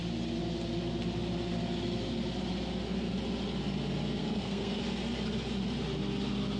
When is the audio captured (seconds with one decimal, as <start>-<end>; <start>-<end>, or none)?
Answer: 0.0-4.2; 4.8-6.6